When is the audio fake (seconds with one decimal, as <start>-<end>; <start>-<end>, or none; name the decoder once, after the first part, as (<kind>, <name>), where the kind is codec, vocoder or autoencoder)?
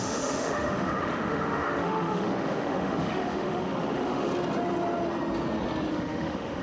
0.0-4.3 (autoencoder, DAC-VAE); 5.9-6.6